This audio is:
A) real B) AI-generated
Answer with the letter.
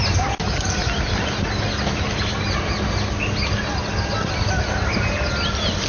A